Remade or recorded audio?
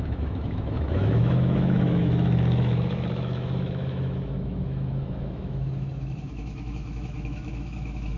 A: remade